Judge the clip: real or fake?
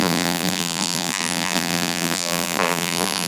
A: fake